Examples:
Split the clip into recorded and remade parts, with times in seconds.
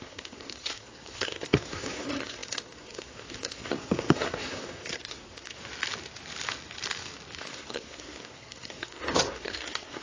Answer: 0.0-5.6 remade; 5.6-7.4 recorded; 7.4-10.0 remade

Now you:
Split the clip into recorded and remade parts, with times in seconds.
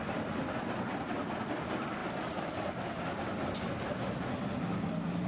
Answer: 0.0-5.3 recorded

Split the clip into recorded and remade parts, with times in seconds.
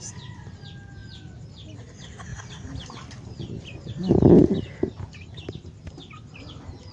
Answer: 0.0-1.0 recorded; 1.0-1.9 remade; 1.9-2.3 recorded; 2.3-4.3 remade; 4.3-6.9 recorded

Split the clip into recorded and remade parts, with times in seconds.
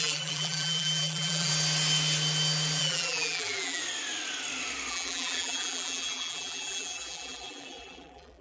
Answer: 0.0-1.5 remade; 1.5-2.8 recorded; 2.8-3.8 remade; 3.8-4.9 recorded; 4.9-8.4 remade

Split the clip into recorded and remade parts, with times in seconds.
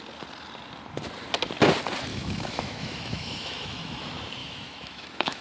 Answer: 0.0-2.1 recorded; 2.1-4.0 remade; 4.0-4.4 recorded; 4.4-5.4 remade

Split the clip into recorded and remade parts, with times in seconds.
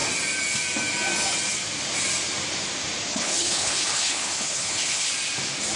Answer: 0.0-3.1 recorded; 3.1-5.1 remade; 5.1-5.8 recorded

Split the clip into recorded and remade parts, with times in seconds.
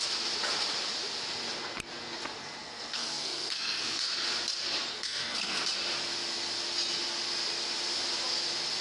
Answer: 0.0-2.6 recorded; 2.6-4.0 remade; 4.0-4.9 recorded; 4.9-5.6 remade; 5.6-8.8 recorded